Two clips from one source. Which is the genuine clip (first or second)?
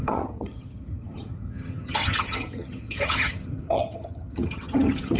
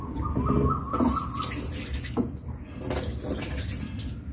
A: second